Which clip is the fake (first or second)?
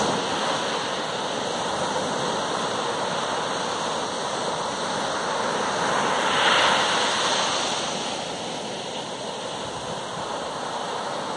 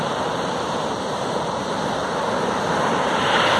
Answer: second